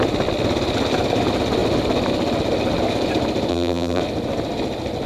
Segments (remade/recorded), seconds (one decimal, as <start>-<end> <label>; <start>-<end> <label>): 0.0-3.5 recorded; 3.5-4.0 remade; 4.0-5.1 recorded